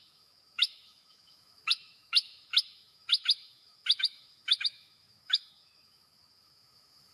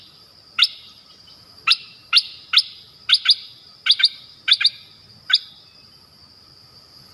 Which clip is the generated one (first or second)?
first